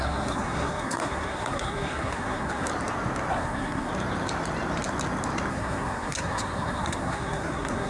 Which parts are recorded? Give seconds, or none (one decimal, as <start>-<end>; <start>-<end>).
2.7-3.3; 3.9-5.5